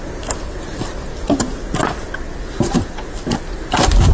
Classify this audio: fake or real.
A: fake